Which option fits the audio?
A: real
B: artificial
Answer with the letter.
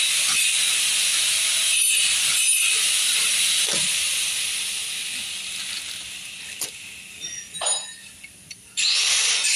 A